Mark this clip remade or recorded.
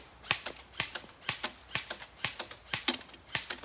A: recorded